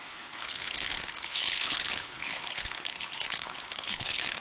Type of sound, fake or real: fake